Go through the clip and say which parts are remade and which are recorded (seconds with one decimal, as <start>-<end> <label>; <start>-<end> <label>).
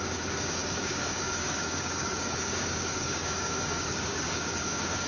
0.0-5.1 remade